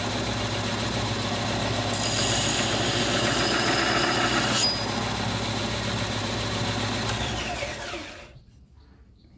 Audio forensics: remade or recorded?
recorded